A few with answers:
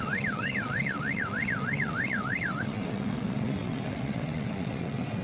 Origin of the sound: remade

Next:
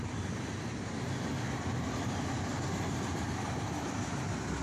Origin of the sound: recorded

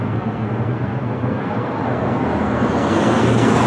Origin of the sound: remade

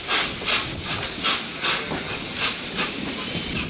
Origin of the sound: recorded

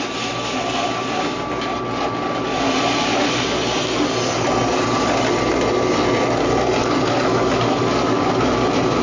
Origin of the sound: recorded